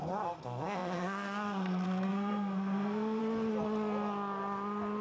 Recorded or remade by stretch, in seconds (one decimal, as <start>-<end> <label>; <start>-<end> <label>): 0.0-3.2 remade; 3.2-5.0 recorded